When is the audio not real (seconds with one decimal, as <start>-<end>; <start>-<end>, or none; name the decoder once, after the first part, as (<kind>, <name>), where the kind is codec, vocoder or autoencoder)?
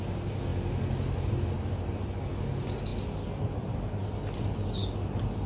none